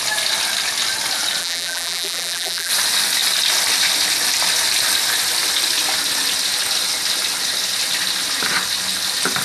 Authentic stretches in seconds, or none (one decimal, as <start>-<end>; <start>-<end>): 0.0-1.4; 2.7-9.4